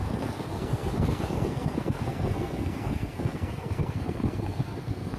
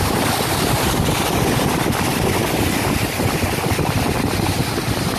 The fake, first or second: first